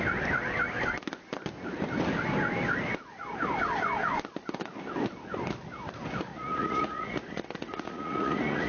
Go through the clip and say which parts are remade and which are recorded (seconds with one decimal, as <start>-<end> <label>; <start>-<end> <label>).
0.0-6.3 recorded; 6.3-8.7 remade